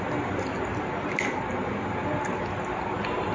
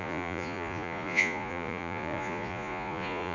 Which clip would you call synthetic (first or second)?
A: second